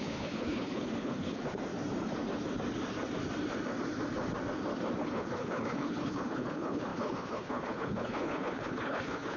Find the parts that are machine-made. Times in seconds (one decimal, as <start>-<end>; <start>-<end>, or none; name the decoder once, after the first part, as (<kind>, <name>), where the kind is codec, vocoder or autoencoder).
0.0-1.6 (codec, HILCodec); 5.0-9.4